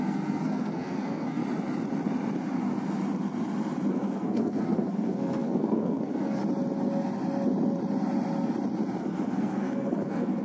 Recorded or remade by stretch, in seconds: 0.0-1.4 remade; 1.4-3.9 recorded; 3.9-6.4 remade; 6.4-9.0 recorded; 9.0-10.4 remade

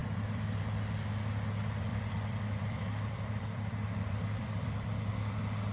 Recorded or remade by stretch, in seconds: 0.0-0.6 remade; 0.6-1.9 recorded; 1.9-4.9 remade; 4.9-5.7 recorded

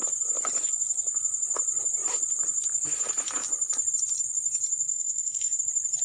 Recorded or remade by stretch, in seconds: 0.0-4.9 recorded; 4.9-5.6 remade; 5.6-6.0 recorded

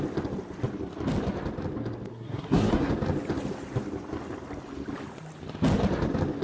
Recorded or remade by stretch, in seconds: 0.0-2.1 recorded; 2.1-2.9 remade; 2.9-6.4 recorded

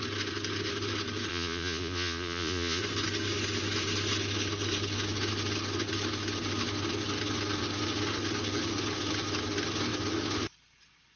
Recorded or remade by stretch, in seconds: 0.0-1.3 recorded; 1.3-2.8 remade; 2.8-11.2 recorded